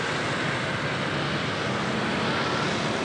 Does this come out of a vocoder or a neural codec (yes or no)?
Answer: no